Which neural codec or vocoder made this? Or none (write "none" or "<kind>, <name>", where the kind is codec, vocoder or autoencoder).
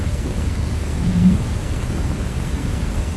codec, SNAC